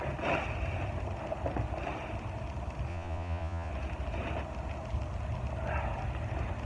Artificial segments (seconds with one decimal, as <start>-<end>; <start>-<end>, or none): 2.9-3.7